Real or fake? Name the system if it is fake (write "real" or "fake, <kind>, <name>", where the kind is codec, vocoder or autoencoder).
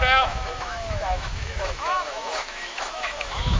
fake, autoencoder, DAC-VAE